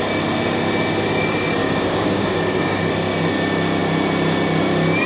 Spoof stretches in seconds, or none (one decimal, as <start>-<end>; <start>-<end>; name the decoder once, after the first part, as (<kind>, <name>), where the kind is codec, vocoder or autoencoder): 1.6-2.8 (codec, DAC)